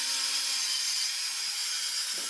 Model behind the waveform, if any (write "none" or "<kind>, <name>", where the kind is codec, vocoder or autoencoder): vocoder, BigVGAN v2